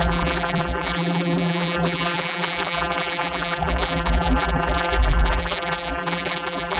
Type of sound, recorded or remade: remade